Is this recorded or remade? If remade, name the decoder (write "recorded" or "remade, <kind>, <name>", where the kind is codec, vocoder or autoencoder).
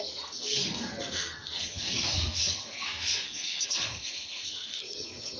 remade, codec, SNAC